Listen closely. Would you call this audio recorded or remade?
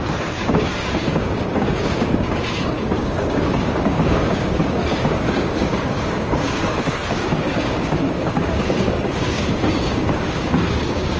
remade